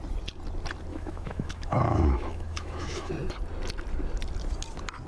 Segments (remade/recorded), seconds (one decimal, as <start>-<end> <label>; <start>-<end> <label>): 0.0-0.9 recorded; 0.9-3.1 remade; 3.1-5.1 recorded